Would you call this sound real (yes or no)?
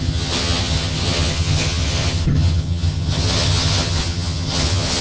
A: no